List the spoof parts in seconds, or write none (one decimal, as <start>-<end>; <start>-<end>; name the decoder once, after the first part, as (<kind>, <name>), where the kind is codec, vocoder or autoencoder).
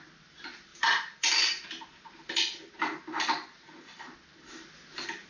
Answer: 0.7-2.4 (vocoder, BigVGAN v2)